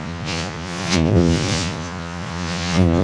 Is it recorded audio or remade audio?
remade